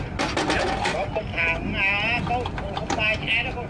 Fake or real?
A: real